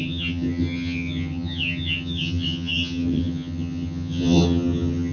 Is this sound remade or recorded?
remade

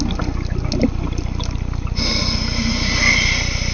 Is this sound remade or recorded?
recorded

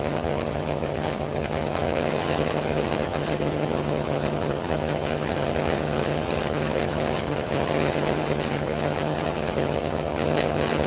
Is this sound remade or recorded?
remade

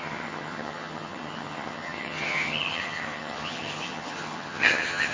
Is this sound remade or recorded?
remade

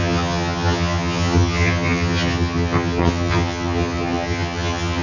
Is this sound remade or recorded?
remade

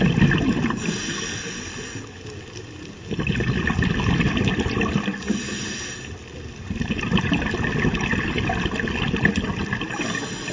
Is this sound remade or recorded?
recorded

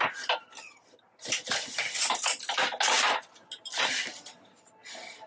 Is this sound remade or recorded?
recorded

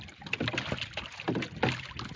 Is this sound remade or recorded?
recorded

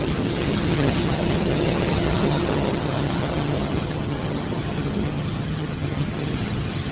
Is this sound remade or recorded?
remade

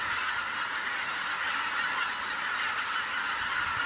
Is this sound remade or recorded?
recorded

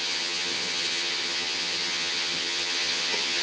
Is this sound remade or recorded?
remade